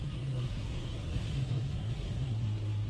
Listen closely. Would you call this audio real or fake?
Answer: fake